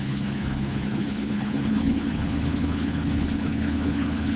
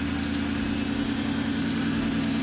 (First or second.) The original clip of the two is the second